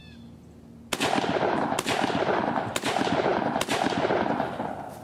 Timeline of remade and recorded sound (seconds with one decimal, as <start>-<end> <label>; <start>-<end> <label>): 0.0-5.0 recorded